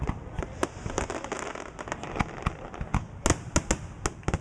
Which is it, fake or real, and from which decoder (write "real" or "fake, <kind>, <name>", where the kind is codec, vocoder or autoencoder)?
real